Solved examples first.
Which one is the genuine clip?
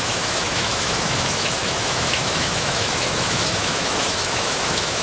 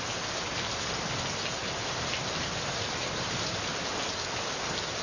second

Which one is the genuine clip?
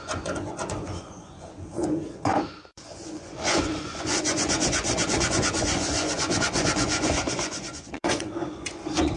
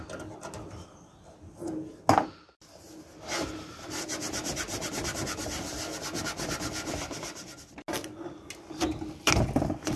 second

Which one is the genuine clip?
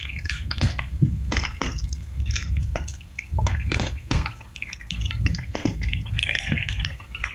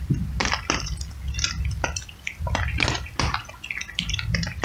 second